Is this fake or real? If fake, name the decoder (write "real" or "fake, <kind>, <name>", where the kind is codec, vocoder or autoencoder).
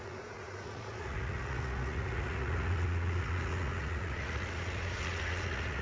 fake, vocoder, Vocos